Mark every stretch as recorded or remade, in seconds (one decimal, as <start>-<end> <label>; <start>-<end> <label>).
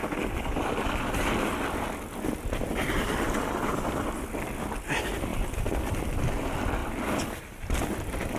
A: 0.0-5.3 recorded; 5.3-6.2 remade; 6.2-6.8 recorded; 6.8-7.5 remade; 7.5-8.4 recorded